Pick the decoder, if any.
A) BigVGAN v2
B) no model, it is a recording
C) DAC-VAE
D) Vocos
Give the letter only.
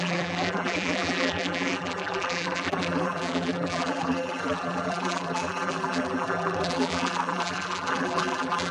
A